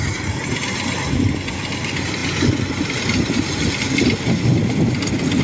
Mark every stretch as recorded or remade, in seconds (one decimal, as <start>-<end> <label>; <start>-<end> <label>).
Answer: 0.0-5.4 recorded